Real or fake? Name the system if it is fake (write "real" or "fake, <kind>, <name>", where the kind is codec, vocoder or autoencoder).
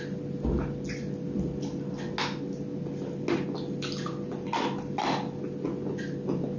real